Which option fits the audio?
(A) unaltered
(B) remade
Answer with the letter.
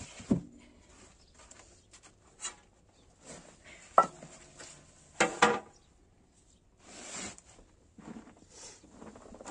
A